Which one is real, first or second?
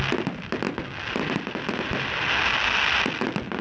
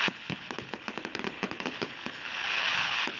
first